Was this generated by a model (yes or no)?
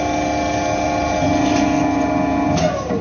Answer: no